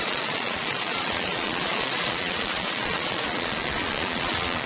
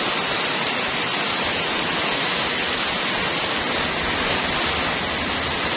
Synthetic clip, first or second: first